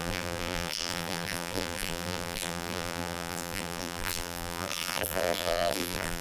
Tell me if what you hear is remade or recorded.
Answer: remade